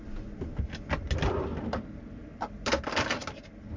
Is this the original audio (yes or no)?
yes